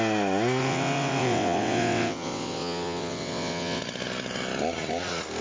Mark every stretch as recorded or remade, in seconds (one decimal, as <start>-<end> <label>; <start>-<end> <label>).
0.0-0.6 recorded; 0.6-3.8 remade; 3.8-5.4 recorded